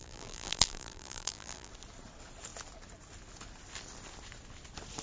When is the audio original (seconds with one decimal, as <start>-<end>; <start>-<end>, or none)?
1.7-5.0